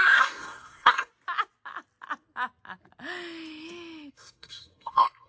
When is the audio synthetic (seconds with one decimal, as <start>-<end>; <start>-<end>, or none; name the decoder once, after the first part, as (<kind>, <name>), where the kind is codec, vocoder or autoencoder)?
0.0-1.1 (codec, SNAC); 4.1-5.3